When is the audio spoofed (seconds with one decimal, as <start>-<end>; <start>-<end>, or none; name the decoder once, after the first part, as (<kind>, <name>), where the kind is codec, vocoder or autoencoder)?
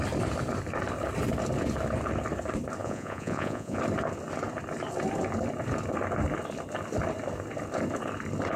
2.8-3.8 (vocoder, Vocos)